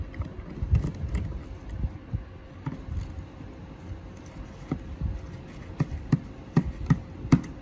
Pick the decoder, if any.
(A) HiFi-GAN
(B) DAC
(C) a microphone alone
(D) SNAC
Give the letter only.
C